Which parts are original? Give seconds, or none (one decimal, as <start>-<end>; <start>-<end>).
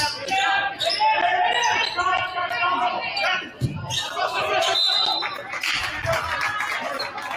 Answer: 0.0-7.4